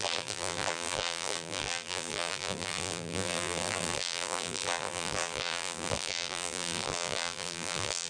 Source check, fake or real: fake